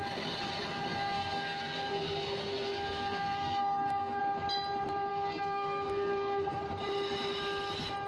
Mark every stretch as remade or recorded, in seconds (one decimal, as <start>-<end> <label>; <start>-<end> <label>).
0.0-0.9 recorded; 0.9-4.2 remade; 4.2-5.1 recorded; 5.1-6.6 remade; 6.6-8.1 recorded

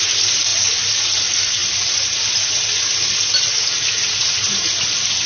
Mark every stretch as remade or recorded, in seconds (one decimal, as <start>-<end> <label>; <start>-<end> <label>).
0.0-5.3 recorded